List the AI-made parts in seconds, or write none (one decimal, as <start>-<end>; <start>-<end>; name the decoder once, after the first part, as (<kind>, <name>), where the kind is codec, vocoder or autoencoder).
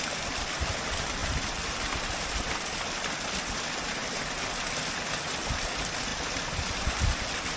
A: none